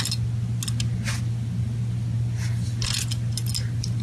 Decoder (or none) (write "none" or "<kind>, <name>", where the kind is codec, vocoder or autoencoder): none